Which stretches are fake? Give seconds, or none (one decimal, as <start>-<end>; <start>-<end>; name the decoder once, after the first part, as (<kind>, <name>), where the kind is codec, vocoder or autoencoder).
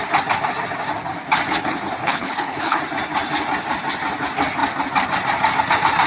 2.0-2.8 (codec, HILCodec)